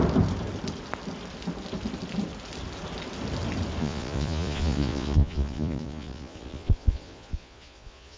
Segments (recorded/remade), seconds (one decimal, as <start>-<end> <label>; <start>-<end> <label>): 0.0-3.8 recorded; 3.8-8.2 remade